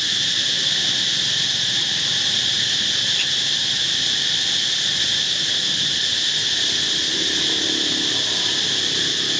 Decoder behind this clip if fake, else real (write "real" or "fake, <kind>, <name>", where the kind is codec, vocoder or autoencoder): real